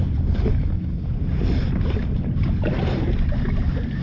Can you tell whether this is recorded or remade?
recorded